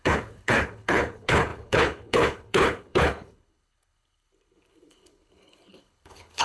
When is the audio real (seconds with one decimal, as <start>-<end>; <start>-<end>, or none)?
none